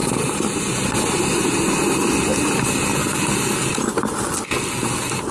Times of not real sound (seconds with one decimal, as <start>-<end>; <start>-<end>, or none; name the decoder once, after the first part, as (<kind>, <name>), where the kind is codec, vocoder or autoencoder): none

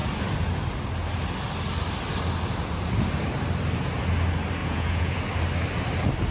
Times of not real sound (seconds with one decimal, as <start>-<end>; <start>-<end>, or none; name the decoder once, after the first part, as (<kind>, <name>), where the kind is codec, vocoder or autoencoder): 4.6-5.2 (vocoder, Vocos)